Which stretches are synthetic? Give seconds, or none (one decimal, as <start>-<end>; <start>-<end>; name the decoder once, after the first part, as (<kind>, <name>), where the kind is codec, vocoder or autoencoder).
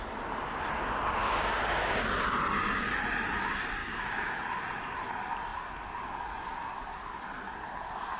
1.2-2.0 (codec, DAC); 3.8-4.4